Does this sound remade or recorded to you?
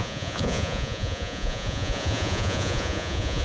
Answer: remade